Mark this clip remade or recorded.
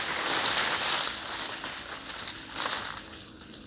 recorded